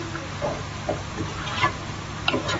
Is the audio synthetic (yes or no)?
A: no